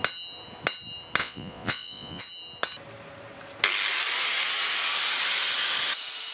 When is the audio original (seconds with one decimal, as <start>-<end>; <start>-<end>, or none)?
0.0-1.2; 2.2-6.3